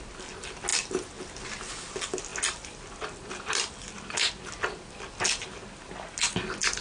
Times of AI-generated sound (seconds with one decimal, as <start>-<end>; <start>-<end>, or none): none